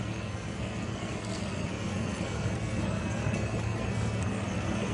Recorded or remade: remade